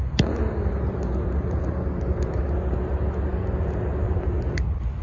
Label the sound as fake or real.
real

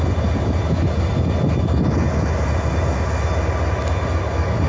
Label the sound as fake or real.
real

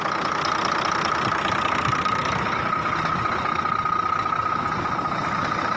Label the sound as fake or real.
real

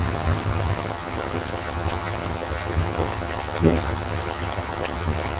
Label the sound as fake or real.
fake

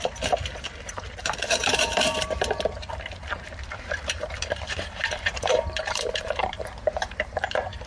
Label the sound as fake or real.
fake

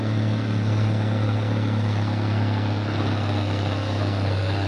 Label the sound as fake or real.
fake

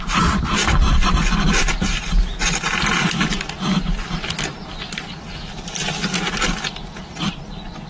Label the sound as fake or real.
real